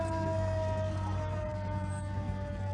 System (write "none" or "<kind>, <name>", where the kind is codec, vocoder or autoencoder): codec, SNAC